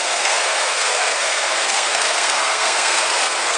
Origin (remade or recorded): remade